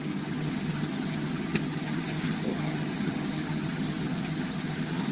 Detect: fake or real fake